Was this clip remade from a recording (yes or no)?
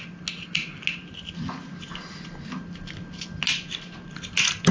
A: no